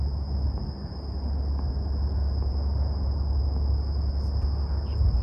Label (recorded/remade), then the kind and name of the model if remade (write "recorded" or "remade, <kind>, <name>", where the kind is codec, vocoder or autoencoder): recorded